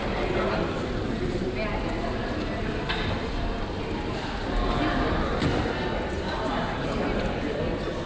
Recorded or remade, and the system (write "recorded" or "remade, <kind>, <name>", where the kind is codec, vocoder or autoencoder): recorded